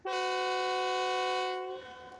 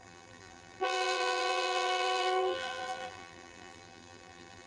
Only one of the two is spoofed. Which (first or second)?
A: second